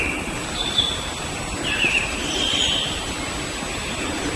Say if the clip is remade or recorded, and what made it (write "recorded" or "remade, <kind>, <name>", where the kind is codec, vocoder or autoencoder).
recorded